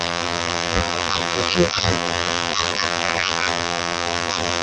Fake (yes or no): yes